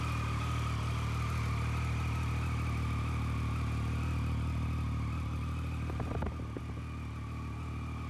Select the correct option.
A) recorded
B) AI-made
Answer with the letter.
A